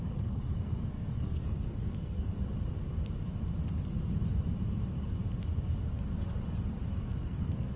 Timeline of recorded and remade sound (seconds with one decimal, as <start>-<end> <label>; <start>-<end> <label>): 0.0-2.3 remade; 2.3-7.0 recorded; 7.0-7.8 remade